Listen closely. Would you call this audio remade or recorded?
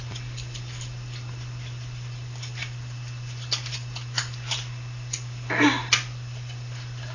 recorded